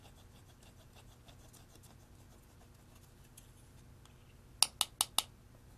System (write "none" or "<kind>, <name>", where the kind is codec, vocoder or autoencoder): none